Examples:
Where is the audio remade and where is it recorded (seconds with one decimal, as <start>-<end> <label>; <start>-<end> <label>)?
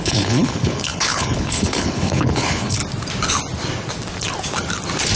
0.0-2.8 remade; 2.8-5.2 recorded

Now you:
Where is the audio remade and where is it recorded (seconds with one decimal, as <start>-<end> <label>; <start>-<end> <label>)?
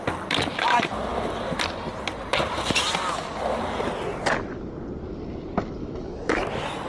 0.0-5.8 recorded; 5.8-6.4 remade; 6.4-6.9 recorded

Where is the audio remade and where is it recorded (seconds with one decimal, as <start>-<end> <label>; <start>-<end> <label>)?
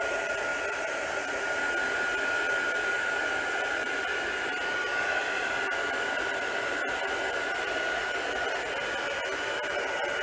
0.0-0.5 remade; 0.5-2.5 recorded; 2.5-10.2 remade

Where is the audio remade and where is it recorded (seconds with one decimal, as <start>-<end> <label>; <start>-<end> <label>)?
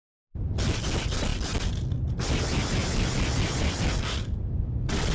0.0-5.1 recorded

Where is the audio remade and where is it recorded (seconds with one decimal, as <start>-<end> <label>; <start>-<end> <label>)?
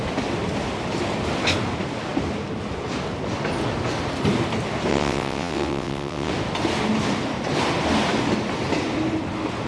0.0-4.9 recorded; 4.9-6.3 remade; 6.3-9.7 recorded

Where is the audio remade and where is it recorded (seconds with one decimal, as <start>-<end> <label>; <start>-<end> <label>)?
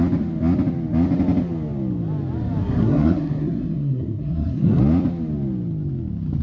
0.0-2.6 recorded; 2.6-4.8 remade; 4.8-6.4 recorded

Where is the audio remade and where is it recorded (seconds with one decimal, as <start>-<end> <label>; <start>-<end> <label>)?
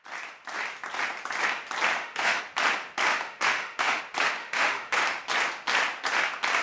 0.0-1.9 recorded; 1.9-2.4 remade; 2.4-3.1 recorded; 3.1-4.0 remade; 4.0-4.4 recorded; 4.4-5.0 remade; 5.0-6.6 recorded